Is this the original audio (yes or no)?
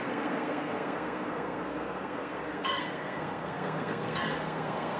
no